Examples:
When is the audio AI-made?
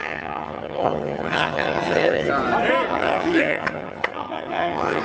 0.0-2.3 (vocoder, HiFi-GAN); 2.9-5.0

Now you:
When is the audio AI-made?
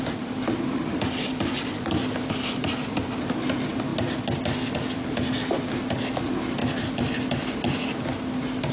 none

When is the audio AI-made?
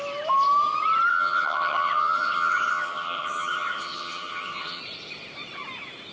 1.1-4.8 (vocoder, HiFi-GAN)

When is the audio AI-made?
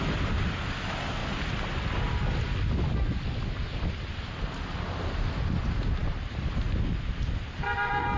none